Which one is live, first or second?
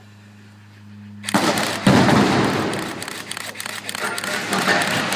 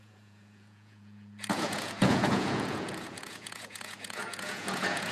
first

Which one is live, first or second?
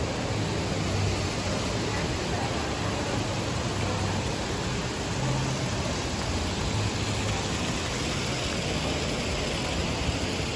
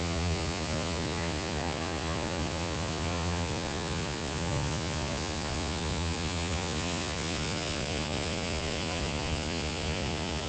first